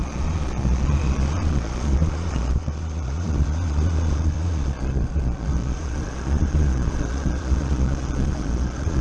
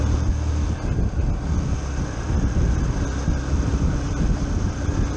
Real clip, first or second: second